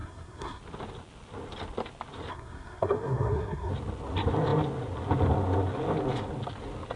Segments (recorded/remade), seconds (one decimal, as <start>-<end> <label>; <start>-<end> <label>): 0.0-0.6 remade; 0.6-2.3 recorded; 2.3-3.7 remade; 3.7-7.0 recorded